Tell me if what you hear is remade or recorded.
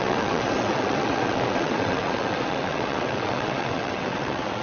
remade